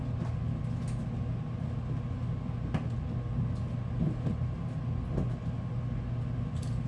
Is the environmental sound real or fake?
real